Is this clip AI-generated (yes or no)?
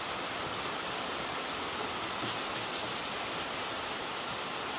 no